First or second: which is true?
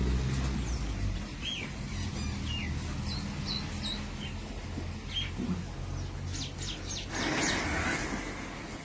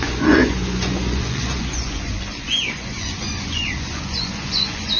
first